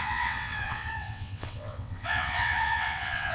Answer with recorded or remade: remade